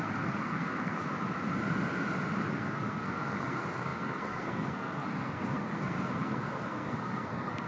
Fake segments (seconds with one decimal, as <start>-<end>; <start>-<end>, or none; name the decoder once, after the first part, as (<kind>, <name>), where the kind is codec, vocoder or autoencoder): 0.0-1.0 (codec, SNAC); 2.5-7.7